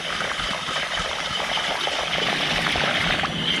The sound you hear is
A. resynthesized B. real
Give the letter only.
B